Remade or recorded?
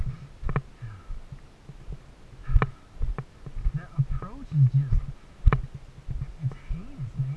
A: recorded